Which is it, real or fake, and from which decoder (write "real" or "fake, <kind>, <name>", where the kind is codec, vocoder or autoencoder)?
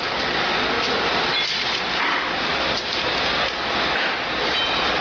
real